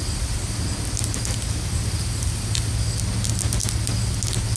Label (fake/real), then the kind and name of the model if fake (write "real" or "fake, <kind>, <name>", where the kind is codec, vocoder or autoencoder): real